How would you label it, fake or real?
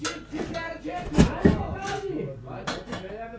real